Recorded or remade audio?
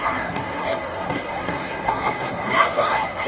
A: remade